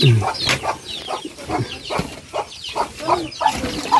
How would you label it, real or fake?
real